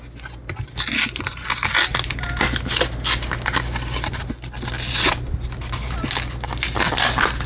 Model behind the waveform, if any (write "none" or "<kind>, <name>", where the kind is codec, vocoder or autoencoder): none